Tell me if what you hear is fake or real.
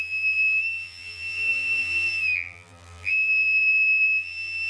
fake